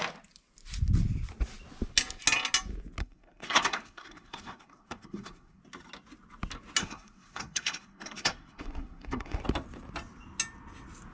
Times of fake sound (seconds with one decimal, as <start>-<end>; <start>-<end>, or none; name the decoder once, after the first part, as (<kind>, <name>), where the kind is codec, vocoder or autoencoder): 3.0-5.6 (codec, SNAC); 6.8-9.4